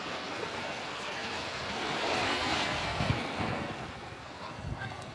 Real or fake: fake